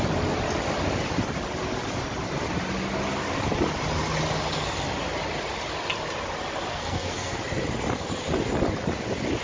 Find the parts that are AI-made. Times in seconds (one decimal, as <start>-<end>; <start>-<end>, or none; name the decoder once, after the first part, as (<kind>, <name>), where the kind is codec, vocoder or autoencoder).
6.7-7.4 (codec, SNAC)

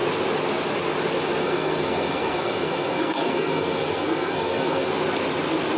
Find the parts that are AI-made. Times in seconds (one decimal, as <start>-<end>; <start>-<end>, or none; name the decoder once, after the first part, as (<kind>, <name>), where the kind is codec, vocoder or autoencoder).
1.4-4.9 (codec, SNAC)